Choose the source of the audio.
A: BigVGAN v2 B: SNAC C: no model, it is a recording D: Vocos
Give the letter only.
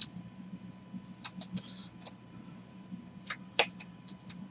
C